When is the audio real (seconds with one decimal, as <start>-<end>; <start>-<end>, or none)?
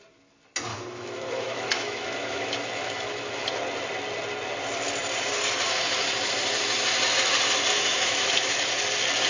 0.0-0.7; 3.5-7.7; 8.6-9.3